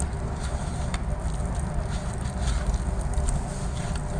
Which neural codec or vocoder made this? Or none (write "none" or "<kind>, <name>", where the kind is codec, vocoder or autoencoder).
none